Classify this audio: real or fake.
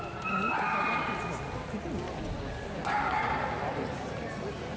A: real